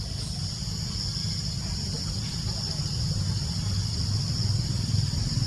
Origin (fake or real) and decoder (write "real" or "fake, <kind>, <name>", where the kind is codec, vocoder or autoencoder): real